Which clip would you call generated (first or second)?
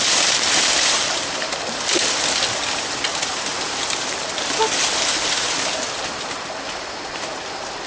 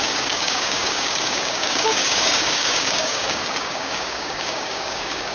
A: second